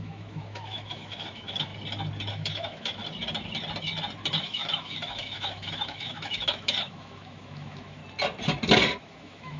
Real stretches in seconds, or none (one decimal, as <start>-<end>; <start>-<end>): 1.7-2.3; 3.0-4.4; 8.0-9.0